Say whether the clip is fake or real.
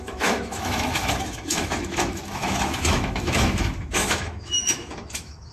fake